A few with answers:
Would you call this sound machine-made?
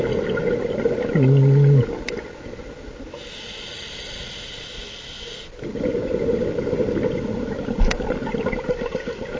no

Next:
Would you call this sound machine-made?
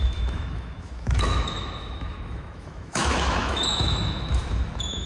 yes